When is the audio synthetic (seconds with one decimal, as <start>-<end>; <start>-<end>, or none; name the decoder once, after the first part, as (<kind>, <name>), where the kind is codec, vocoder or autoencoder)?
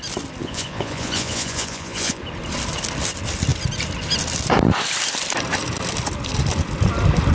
0.4-2.2 (vocoder, Vocos)